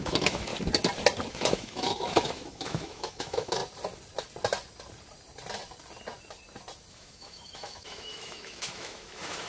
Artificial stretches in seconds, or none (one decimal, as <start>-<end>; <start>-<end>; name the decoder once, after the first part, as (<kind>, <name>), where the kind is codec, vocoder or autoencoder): 0.0-0.5 (autoencoder, DAC-VAE); 1.3-3.6; 6.9-9.5